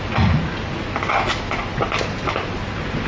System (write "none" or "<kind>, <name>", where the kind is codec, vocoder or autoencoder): none